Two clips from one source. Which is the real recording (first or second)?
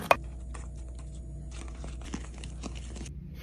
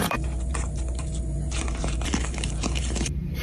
first